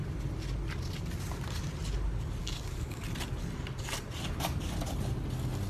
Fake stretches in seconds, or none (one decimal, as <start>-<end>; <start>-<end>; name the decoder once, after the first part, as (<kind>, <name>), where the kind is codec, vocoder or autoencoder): 2.4-3.0 (codec, DAC)